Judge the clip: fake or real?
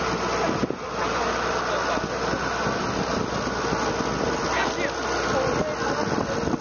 real